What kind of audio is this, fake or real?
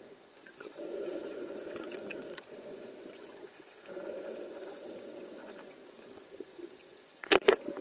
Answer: fake